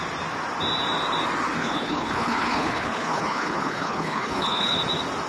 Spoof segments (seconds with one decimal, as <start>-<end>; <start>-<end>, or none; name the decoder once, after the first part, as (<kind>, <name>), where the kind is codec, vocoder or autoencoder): 1.6-4.8 (codec, HILCodec)